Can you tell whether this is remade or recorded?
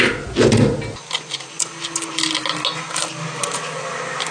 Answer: recorded